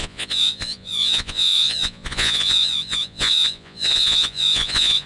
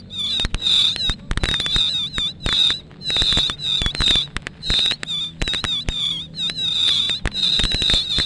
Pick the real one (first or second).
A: second